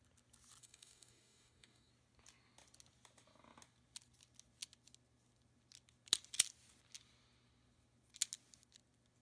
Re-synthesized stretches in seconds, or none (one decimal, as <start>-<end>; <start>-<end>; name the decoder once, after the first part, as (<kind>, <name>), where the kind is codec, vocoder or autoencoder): 0.6-1.9 (codec, DAC)